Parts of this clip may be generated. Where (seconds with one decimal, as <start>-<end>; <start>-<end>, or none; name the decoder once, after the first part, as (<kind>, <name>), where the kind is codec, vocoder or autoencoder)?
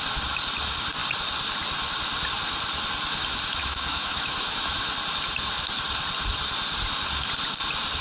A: 3.6-4.9 (autoencoder, DAC-VAE)